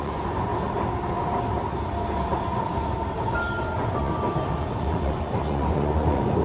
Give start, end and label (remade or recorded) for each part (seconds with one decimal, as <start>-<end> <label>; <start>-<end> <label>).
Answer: 0.0-0.5 remade; 0.5-3.6 recorded; 3.6-4.1 remade; 4.1-4.6 recorded; 4.6-6.4 remade